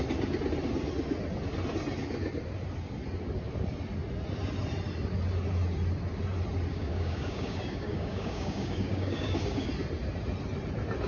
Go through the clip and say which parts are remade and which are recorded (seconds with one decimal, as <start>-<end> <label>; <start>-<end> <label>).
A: 0.0-6.7 recorded; 6.7-9.7 remade; 9.7-11.1 recorded